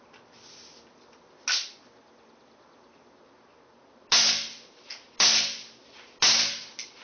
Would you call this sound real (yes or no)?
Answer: yes